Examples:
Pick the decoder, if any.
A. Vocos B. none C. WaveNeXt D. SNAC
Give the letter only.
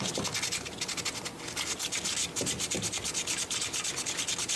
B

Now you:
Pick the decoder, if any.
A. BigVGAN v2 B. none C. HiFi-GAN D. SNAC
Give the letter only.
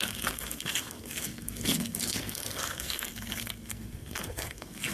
D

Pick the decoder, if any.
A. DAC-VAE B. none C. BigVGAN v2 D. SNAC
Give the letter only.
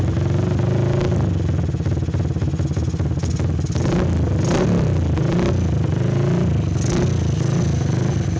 B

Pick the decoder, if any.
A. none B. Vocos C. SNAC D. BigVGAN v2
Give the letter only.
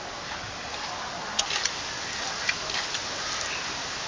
A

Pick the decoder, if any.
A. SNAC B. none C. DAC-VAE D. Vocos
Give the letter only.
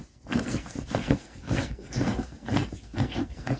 A